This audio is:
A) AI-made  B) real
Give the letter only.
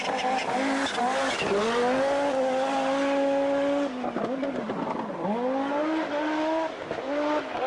B